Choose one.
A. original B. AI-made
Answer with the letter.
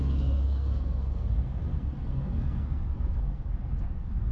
B